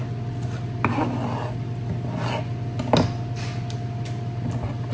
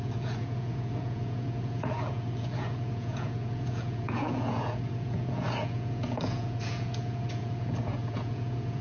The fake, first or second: second